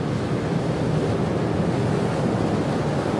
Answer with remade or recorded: recorded